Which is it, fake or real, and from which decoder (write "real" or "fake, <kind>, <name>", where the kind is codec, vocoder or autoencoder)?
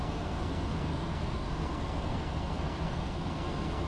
fake, codec, SNAC